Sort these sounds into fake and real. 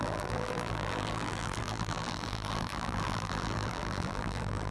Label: fake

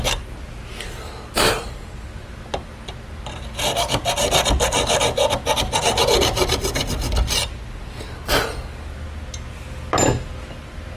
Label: real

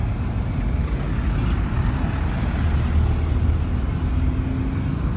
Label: real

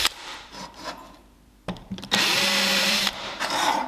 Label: fake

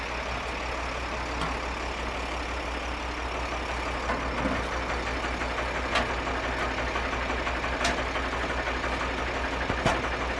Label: real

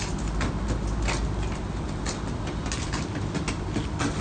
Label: real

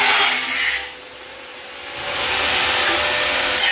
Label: real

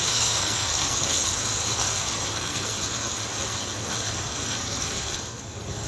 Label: fake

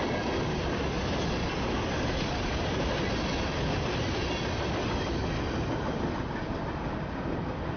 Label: real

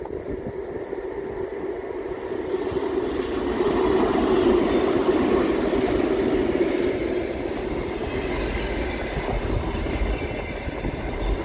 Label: real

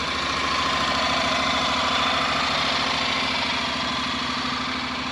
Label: real